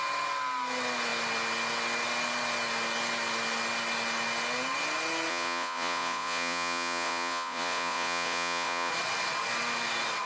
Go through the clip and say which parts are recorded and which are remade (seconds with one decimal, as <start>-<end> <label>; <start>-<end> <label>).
0.0-5.3 recorded; 5.3-8.9 remade; 8.9-10.3 recorded